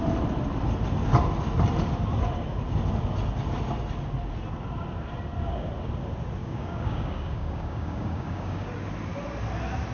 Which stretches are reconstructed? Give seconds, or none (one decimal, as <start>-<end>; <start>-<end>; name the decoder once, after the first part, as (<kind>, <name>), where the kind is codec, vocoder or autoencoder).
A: 6.4-8.7 (codec, DAC)